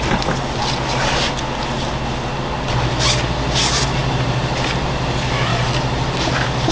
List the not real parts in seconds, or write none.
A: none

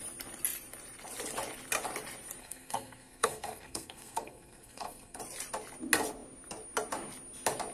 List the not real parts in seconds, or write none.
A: 2.4-5.2

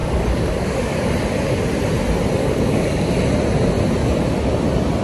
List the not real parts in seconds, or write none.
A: 0.0-1.1; 2.4-3.1

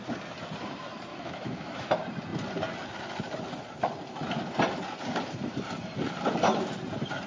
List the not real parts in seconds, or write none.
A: 1.1-1.9